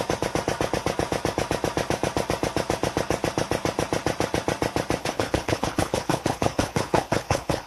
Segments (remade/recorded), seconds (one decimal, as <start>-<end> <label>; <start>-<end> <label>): 0.0-5.0 recorded; 5.0-7.7 remade